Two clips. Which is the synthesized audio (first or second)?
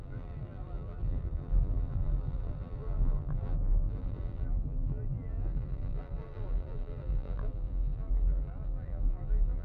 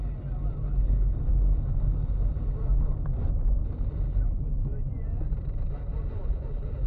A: first